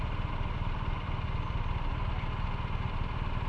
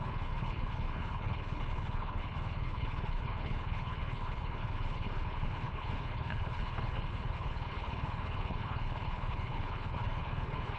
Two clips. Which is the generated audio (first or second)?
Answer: second